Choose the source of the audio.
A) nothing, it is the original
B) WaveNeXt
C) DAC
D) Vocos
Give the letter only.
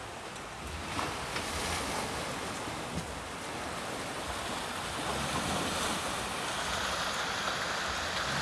A